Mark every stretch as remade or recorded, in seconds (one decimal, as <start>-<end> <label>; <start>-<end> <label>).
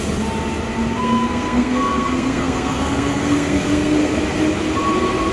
0.0-1.0 recorded; 1.0-4.2 remade; 4.2-5.3 recorded